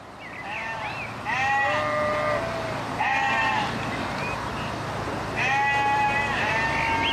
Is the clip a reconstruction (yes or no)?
no